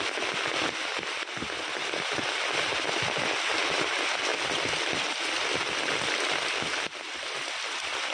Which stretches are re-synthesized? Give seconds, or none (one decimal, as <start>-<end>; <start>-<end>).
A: none